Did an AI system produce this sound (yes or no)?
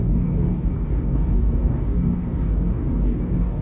yes